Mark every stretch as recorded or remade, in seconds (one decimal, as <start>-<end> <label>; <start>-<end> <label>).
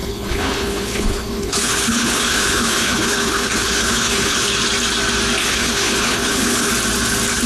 0.0-4.5 remade; 4.5-5.4 recorded; 5.4-6.7 remade; 6.7-7.5 recorded